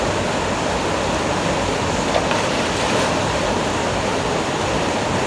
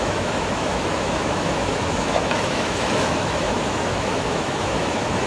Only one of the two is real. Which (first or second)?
first